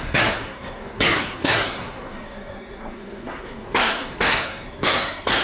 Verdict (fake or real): fake